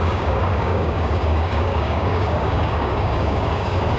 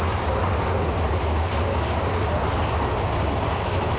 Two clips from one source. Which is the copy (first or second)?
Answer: first